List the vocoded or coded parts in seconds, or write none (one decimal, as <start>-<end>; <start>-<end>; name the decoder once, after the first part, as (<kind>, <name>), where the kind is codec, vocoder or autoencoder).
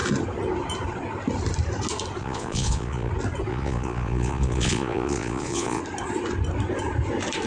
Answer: 2.2-3.1 (vocoder, Vocos); 3.5-5.8